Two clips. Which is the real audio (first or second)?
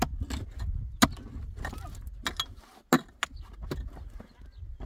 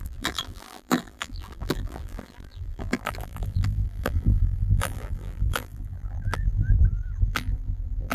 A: first